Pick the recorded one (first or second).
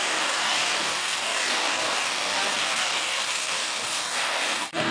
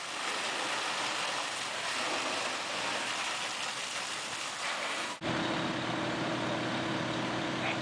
second